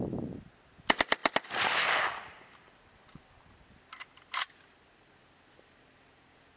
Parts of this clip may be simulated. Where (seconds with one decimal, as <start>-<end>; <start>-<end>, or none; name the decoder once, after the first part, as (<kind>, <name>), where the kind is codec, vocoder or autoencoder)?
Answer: none